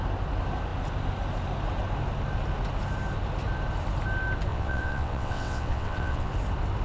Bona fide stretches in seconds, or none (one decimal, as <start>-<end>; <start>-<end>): 0.0-4.5; 6.3-6.8